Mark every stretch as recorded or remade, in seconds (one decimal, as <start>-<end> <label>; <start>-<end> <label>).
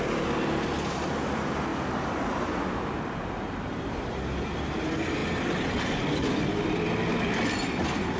0.0-1.7 recorded; 1.7-2.7 remade; 2.7-8.2 recorded